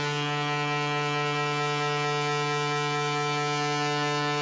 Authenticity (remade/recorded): recorded